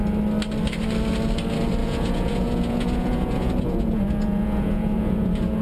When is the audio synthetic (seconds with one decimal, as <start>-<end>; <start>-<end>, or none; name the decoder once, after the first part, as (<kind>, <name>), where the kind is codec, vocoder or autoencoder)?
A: 1.8-5.6 (vocoder, Vocos)